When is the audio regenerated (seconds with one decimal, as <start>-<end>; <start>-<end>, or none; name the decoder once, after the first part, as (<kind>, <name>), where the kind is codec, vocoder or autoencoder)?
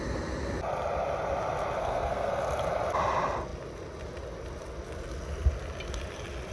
1.8-2.4 (codec, SNAC)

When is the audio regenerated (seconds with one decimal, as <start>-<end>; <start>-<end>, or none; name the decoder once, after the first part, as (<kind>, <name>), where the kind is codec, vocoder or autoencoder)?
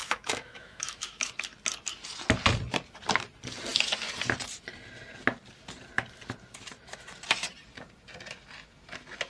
0.0-1.3 (autoencoder, DAC-VAE)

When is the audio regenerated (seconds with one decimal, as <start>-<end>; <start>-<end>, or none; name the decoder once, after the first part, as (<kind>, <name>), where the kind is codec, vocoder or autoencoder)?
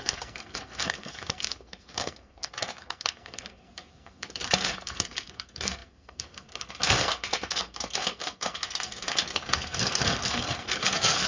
0.0-11.3 (codec, SNAC)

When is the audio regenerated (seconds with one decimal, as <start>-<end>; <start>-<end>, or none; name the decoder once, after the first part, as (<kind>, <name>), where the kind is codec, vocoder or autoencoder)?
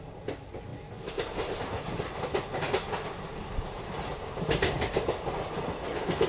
none